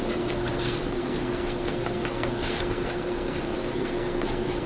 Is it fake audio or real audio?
fake